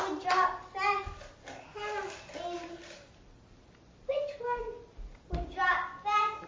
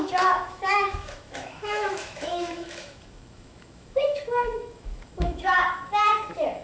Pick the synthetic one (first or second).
second